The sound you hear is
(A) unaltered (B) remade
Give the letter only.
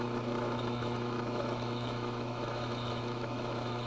B